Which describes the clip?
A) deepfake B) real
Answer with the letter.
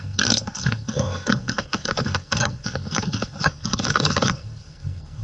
A